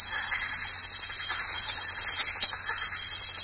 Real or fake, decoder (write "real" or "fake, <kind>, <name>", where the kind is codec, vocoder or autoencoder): real